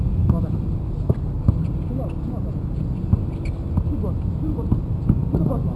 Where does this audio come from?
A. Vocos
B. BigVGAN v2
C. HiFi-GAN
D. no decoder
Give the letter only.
D